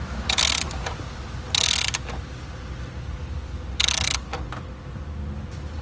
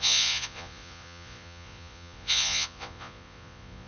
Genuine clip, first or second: first